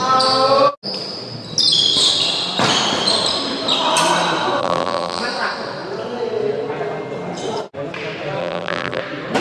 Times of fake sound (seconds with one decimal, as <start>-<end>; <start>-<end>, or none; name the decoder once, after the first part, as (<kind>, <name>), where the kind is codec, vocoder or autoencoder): 4.6-5.2 (vocoder, BigVGAN v2); 8.4-9.0